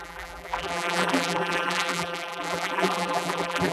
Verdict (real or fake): fake